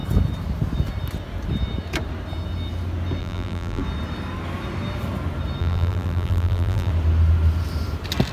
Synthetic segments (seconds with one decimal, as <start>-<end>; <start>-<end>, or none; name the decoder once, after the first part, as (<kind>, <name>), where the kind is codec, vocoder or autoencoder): 3.2-3.8 (vocoder, BigVGAN v2); 5.6-6.9